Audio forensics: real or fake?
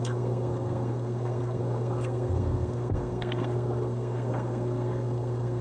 fake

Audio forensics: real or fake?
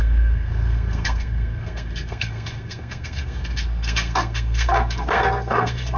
fake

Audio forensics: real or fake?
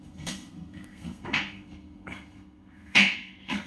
fake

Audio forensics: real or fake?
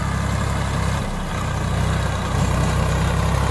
real